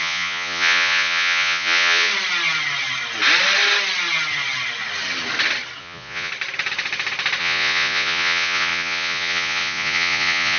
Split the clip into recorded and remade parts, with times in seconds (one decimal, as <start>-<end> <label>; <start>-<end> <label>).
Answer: 0.0-2.1 remade; 2.1-5.8 recorded; 5.8-6.3 remade; 6.3-7.4 recorded; 7.4-10.6 remade